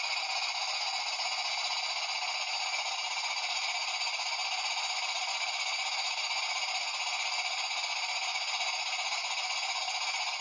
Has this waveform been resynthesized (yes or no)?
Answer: no